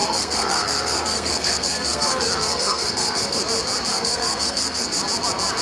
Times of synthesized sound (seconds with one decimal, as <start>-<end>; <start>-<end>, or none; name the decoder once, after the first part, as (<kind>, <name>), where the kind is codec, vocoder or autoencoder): 0.0-3.4 (codec, SNAC); 3.9-5.0